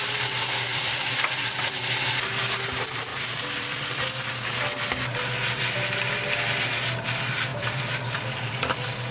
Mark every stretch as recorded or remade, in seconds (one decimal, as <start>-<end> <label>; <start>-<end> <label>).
0.0-0.7 recorded; 0.7-1.8 remade; 1.8-3.1 recorded; 3.1-4.1 remade; 4.1-7.5 recorded; 7.5-8.7 remade; 8.7-9.1 recorded